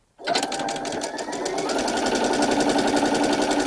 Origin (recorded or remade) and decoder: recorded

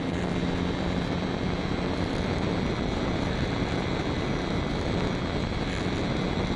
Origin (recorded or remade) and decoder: recorded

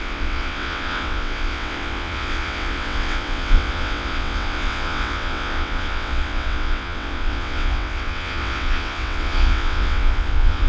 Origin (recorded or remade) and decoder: remade, vocoder, WaveNeXt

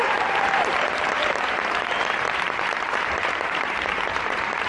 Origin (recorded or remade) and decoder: remade, vocoder, BigVGAN v2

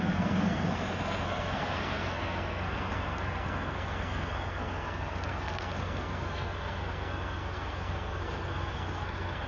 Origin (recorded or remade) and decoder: remade, codec, SNAC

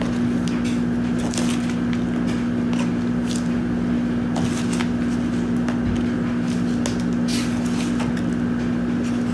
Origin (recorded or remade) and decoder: recorded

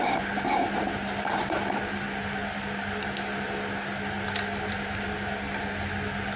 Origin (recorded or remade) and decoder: recorded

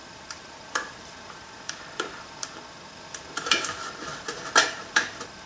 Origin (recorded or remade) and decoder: remade, vocoder, BigVGAN v2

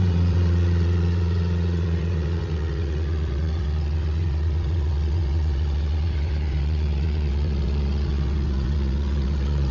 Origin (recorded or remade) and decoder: remade, vocoder, WaveNeXt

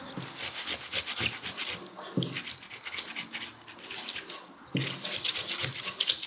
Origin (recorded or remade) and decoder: recorded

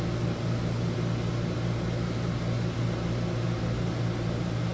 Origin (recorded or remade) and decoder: recorded